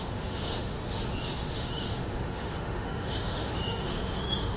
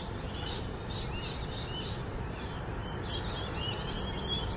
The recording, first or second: second